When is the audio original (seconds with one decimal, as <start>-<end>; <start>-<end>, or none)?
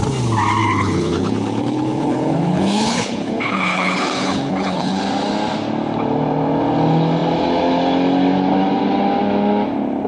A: 0.0-0.6; 5.0-10.1